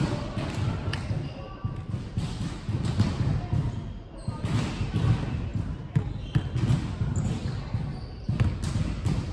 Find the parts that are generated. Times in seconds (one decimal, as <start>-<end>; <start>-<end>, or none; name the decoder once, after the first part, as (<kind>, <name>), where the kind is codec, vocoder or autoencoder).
none